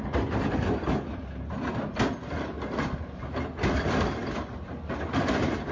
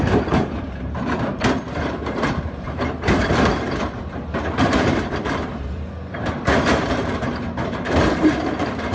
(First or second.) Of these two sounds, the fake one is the second